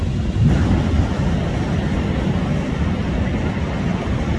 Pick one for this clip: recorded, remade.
recorded